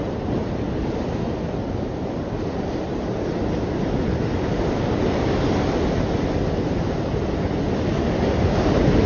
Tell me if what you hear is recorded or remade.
recorded